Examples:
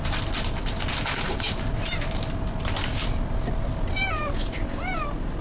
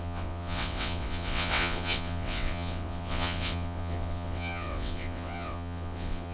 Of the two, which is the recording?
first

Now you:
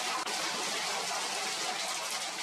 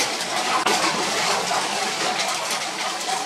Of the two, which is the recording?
first